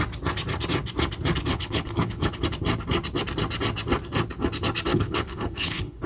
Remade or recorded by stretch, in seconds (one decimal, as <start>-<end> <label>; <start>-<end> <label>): 0.0-1.5 recorded; 1.5-2.4 remade; 2.4-4.9 recorded; 4.9-6.1 remade

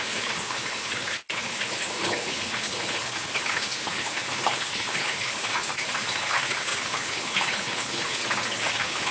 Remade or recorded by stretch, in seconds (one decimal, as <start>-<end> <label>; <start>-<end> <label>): 0.0-8.2 remade; 8.2-8.7 recorded; 8.7-9.1 remade

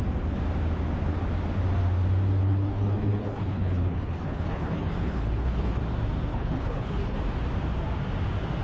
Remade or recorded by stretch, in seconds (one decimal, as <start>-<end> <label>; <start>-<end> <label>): 0.0-2.4 recorded; 2.4-5.8 remade; 5.8-6.3 recorded; 6.3-7.2 remade; 7.2-8.6 recorded

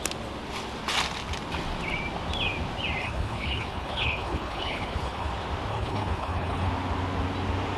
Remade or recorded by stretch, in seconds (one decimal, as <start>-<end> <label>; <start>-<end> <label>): 0.0-3.0 recorded; 3.0-5.3 remade; 5.3-5.7 recorded; 5.7-6.7 remade; 6.7-7.8 recorded

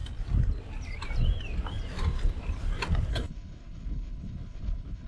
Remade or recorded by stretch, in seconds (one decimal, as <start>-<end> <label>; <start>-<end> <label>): 0.0-3.1 recorded; 3.1-5.1 remade

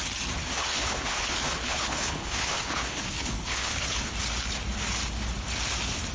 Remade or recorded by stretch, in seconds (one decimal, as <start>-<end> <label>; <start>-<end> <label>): 0.0-0.4 recorded; 0.4-4.1 remade; 4.1-6.1 recorded

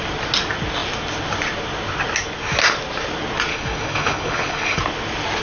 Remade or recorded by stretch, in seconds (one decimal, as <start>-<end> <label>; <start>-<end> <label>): 0.0-3.5 recorded; 3.5-4.8 remade; 4.8-5.4 recorded